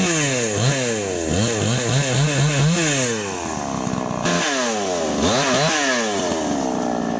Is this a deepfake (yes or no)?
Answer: no